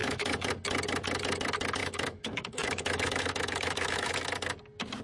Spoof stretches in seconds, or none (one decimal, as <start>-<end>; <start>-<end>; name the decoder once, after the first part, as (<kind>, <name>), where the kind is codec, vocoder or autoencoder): 0.0-0.5 (autoencoder, DAC-VAE); 1.8-4.1